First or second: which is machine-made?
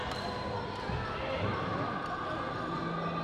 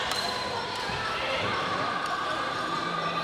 second